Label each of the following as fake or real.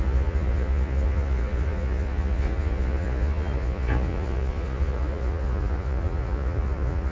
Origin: fake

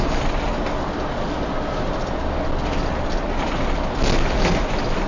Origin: real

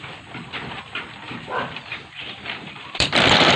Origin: fake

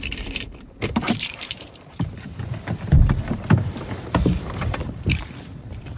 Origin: fake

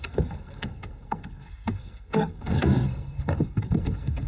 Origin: fake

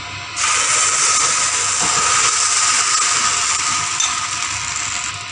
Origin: real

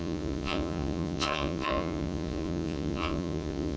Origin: fake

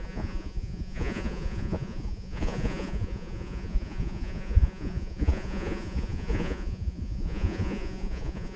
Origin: fake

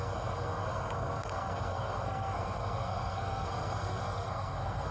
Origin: fake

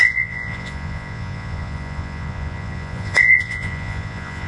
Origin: fake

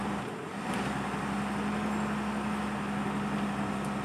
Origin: real